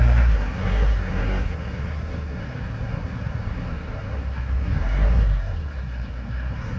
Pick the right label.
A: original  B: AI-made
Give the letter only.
B